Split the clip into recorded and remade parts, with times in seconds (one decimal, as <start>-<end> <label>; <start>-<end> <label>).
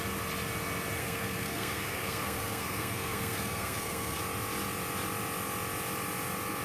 0.0-1.0 recorded; 1.0-4.2 remade; 4.2-6.6 recorded